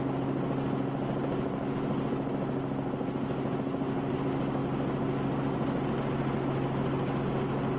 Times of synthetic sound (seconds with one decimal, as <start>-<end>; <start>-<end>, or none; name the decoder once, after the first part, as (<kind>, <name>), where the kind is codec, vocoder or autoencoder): none